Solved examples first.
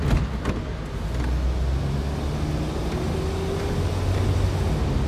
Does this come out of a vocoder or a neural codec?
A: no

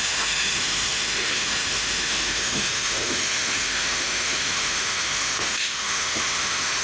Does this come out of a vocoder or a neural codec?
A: yes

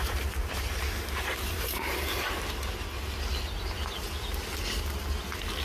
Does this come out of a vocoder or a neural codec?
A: no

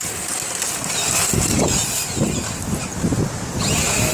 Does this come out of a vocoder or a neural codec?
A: no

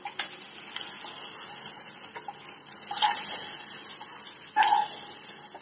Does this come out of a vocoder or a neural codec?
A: no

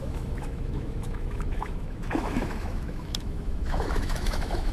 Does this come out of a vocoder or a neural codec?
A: yes